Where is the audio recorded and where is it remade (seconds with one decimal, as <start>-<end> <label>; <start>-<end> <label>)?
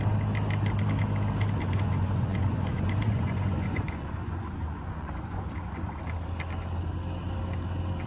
0.0-1.6 recorded; 1.6-6.0 remade; 6.0-8.1 recorded